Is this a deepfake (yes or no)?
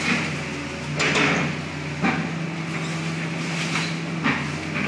no